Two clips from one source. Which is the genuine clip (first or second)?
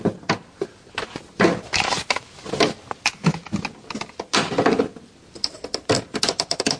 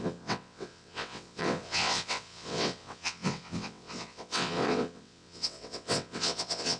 first